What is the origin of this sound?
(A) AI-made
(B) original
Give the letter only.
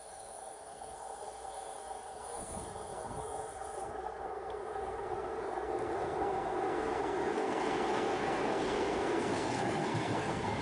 A